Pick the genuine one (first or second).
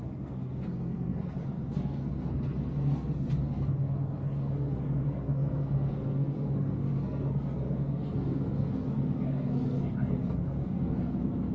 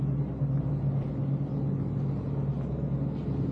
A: second